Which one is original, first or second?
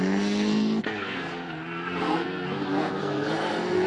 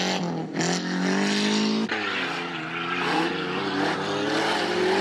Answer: second